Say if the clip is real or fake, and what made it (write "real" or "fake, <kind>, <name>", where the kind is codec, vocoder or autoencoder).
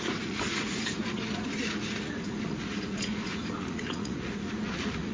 fake, vocoder, Vocos